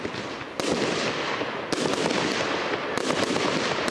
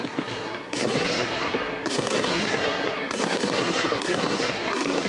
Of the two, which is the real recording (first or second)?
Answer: first